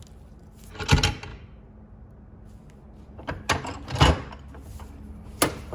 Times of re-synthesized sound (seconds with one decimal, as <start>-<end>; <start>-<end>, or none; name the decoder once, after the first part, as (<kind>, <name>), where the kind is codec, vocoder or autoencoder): none